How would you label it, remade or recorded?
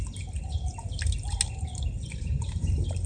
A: recorded